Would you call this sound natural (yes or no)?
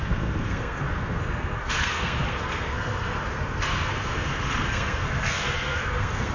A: no